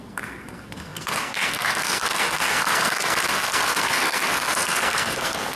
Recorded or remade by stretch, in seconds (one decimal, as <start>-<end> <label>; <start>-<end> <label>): 0.0-5.6 remade